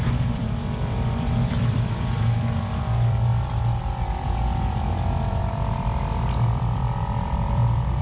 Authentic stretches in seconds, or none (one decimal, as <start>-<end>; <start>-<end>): 3.3-3.8